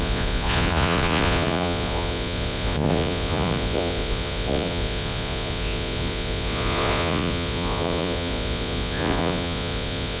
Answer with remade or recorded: remade